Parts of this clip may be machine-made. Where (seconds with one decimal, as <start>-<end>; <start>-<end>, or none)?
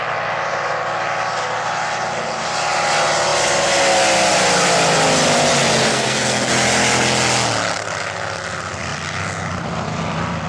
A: 5.9-6.5